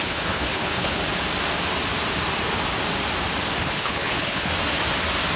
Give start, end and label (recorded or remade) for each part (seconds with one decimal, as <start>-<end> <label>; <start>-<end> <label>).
0.0-1.0 remade; 1.0-3.6 recorded; 3.6-4.5 remade; 4.5-5.4 recorded